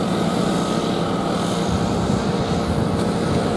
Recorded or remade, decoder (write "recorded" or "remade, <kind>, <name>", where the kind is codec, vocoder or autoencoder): recorded